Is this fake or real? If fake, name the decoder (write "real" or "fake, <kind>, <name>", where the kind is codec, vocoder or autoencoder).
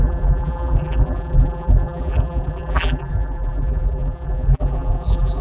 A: fake, vocoder, BigVGAN v2